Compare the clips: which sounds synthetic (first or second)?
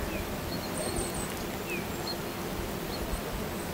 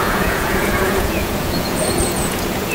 second